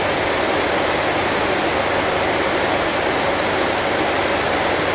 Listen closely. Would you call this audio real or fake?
real